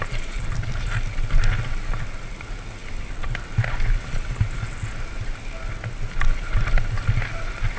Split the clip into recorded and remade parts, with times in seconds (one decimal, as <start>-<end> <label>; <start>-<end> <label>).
0.0-7.8 recorded